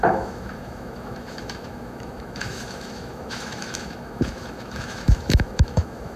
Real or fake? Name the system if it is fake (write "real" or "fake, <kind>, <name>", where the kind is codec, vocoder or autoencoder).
fake, autoencoder, DAC-VAE